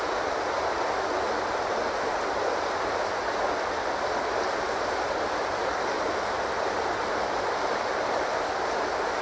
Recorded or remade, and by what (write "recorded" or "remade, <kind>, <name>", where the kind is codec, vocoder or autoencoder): recorded